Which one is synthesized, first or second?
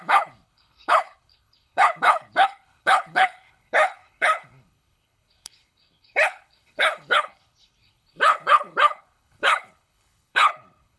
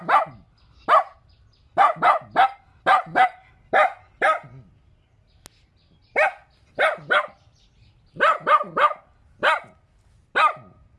first